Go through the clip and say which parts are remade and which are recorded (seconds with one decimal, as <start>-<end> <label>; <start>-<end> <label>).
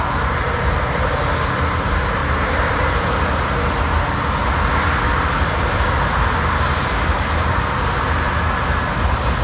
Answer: 0.0-2.2 recorded; 2.2-3.7 remade; 3.7-7.4 recorded; 7.4-8.3 remade; 8.3-9.4 recorded